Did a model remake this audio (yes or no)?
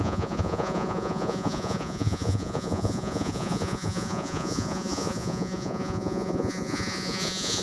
yes